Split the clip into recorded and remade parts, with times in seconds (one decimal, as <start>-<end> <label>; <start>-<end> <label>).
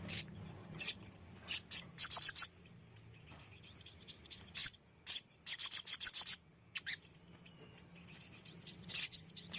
0.0-0.6 recorded; 0.6-1.2 remade; 1.2-9.6 recorded